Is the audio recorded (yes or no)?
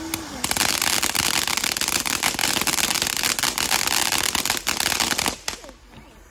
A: yes